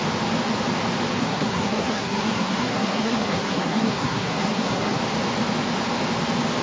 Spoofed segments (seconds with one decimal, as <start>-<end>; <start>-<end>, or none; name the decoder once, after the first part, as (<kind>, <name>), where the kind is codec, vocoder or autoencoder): 1.2-5.0 (codec, SNAC)